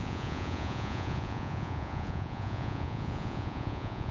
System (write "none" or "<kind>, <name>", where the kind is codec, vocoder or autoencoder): vocoder, Vocos